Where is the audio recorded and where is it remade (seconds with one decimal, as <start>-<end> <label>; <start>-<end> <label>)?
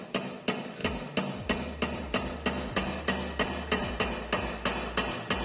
0.0-5.4 recorded